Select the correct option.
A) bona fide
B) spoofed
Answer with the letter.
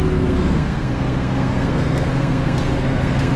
B